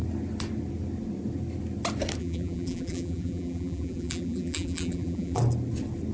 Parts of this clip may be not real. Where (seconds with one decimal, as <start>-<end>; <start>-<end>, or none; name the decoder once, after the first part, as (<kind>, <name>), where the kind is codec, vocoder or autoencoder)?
2.2-5.4 (vocoder, BigVGAN v2)